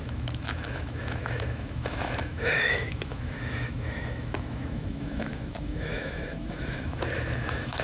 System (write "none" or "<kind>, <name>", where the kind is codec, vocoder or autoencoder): autoencoder, DAC-VAE